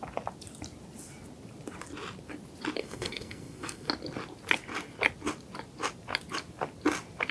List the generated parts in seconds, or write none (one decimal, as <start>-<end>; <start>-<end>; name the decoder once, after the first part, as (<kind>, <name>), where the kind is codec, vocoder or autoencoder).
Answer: 2.8-3.9 (codec, SNAC)